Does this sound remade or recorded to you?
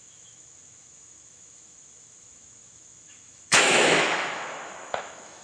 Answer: remade